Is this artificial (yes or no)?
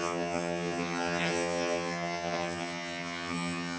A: yes